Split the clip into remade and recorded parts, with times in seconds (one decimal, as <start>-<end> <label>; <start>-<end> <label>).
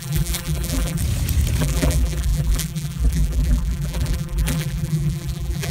0.0-1.0 remade; 1.0-1.6 recorded; 1.6-5.7 remade